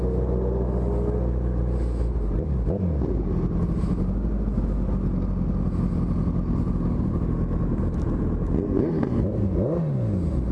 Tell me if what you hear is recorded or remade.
recorded